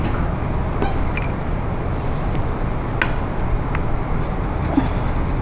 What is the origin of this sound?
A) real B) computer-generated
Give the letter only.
A